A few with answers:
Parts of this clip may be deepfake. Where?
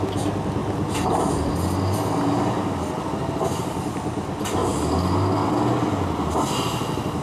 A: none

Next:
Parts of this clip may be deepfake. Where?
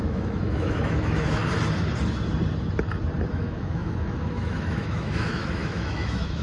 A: 0.0-1.4 (autoencoder, DAC-VAE); 3.3-6.4